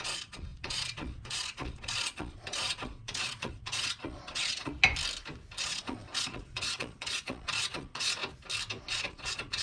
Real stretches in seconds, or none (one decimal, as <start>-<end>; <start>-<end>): 4.7-5.6; 8.2-8.9